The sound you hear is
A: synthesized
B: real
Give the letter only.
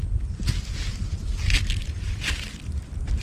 B